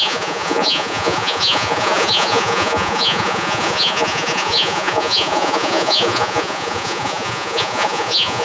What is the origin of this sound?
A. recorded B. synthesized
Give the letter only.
B